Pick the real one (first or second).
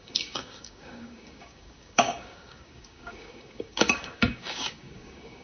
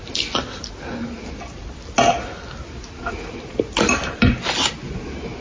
second